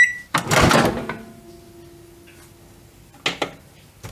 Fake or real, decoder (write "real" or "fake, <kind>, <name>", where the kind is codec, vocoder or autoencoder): real